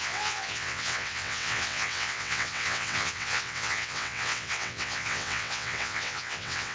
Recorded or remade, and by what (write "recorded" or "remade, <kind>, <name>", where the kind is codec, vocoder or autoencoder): remade, vocoder, WaveNeXt